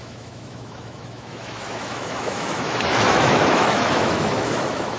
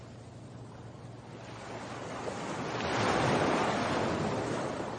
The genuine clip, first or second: second